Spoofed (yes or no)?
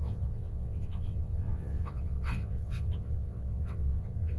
yes